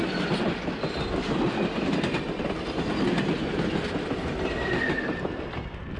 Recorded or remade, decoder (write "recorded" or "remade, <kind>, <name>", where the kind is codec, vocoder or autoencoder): recorded